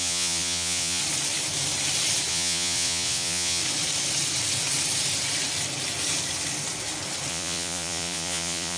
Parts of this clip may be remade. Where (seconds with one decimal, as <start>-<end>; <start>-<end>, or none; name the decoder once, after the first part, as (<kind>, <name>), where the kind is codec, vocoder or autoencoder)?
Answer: 0.0-1.0 (vocoder, Vocos); 2.3-3.6; 7.3-8.8